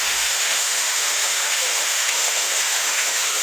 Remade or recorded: remade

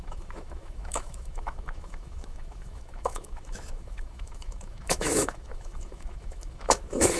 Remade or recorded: remade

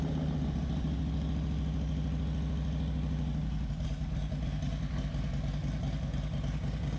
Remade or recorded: recorded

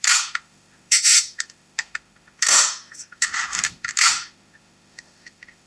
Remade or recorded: remade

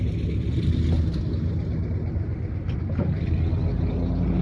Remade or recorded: recorded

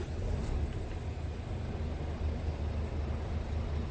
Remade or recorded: recorded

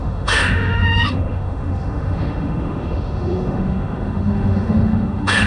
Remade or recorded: remade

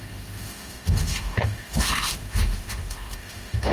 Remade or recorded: remade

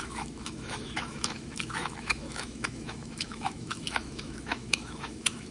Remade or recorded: remade